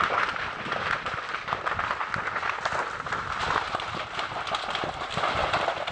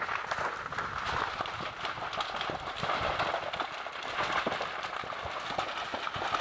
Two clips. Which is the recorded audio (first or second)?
second